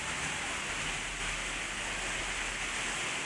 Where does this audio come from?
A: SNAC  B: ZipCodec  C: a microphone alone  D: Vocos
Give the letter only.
C